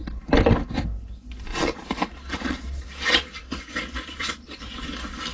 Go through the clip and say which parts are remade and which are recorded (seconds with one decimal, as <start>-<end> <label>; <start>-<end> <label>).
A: 0.0-1.5 recorded; 1.5-4.6 remade; 4.6-5.3 recorded